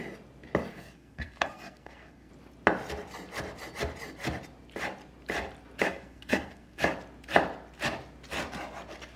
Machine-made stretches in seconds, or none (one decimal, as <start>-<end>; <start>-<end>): 0.7-2.3; 5.9-6.8